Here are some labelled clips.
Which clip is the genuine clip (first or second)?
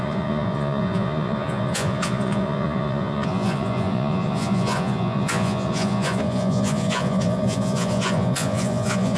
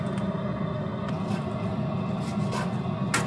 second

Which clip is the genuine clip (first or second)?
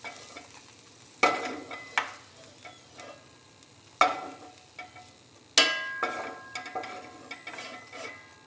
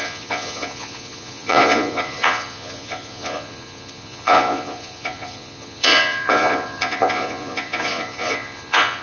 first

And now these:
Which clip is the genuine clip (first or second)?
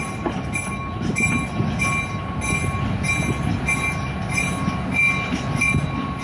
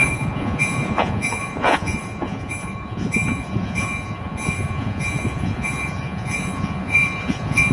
first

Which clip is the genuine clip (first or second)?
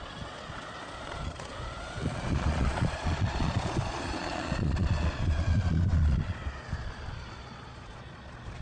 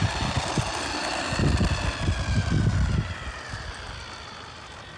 second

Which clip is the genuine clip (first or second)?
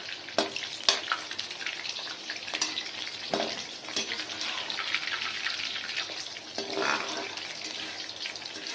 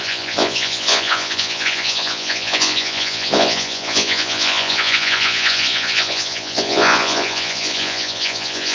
first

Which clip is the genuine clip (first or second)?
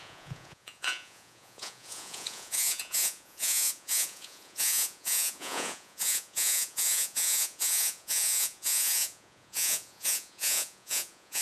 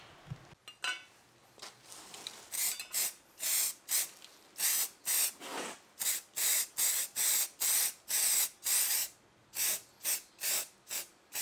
second